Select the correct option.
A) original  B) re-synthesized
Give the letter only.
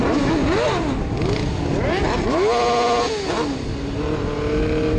A